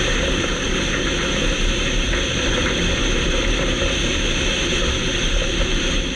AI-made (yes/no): yes